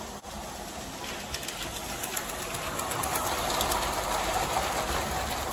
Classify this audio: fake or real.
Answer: real